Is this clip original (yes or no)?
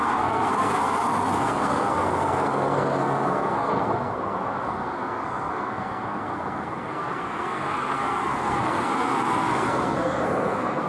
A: no